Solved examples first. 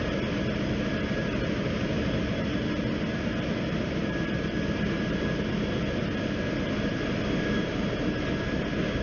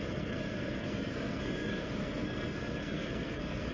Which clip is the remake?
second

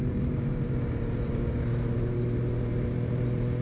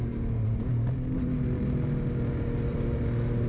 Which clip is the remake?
first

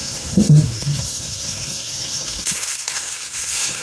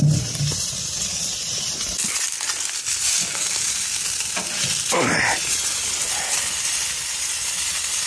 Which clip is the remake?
first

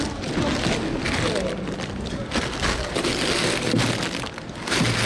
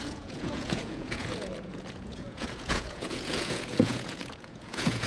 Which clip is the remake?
second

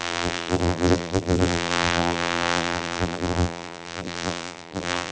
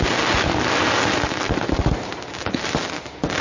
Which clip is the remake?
first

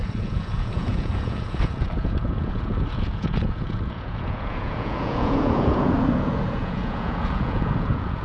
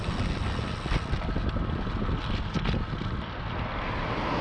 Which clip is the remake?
first